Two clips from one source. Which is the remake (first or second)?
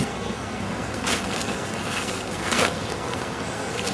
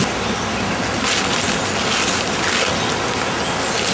first